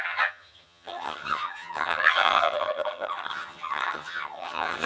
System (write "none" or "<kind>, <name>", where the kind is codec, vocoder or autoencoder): vocoder, HiFi-GAN